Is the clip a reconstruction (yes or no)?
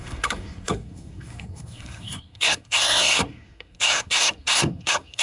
yes